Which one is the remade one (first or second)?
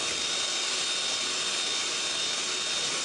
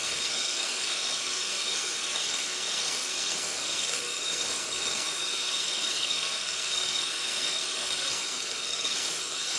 second